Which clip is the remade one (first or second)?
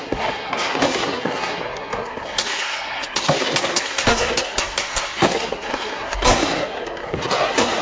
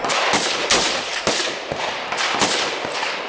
first